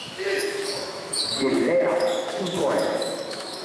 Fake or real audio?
fake